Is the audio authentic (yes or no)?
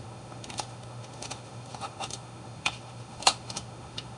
no